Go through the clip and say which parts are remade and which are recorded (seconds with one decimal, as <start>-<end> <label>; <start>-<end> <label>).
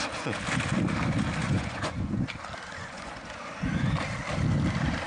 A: 0.0-1.4 recorded; 1.4-2.2 remade; 2.2-2.7 recorded; 2.7-3.9 remade; 3.9-5.1 recorded